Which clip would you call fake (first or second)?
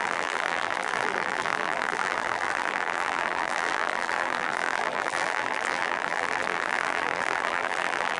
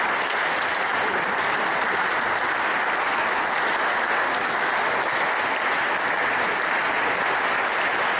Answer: first